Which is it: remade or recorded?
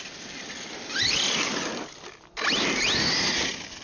recorded